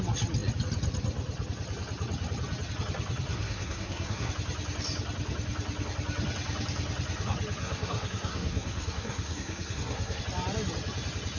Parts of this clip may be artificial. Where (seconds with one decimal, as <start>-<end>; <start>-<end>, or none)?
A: 3.3-4.3; 7.6-10.2